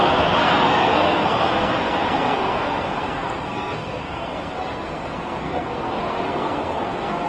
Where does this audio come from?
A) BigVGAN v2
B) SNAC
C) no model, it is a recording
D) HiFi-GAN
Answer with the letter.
B